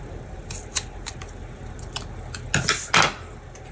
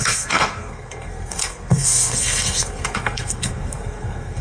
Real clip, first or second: first